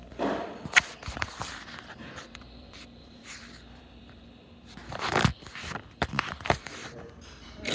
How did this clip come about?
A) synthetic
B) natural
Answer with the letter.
A